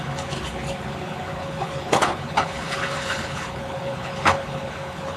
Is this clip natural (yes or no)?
no